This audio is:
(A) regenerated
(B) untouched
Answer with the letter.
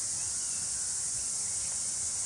A